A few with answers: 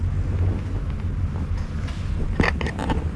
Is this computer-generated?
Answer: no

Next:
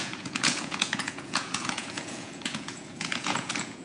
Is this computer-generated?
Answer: yes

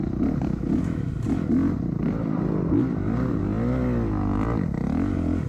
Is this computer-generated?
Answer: no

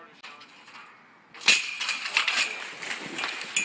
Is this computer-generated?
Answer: no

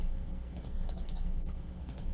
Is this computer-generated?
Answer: yes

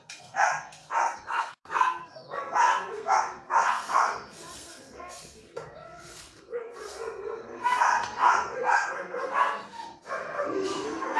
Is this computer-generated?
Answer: yes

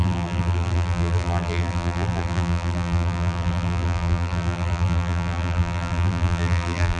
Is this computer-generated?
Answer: yes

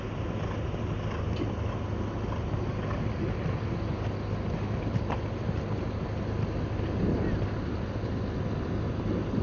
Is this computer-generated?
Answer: no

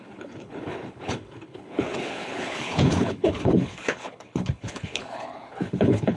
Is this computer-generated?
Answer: yes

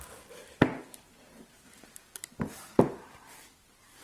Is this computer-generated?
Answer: no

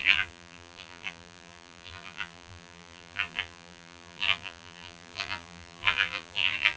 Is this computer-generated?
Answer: yes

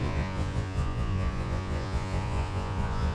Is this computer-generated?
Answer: yes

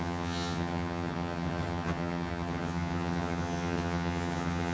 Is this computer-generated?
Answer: yes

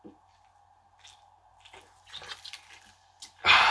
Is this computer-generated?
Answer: no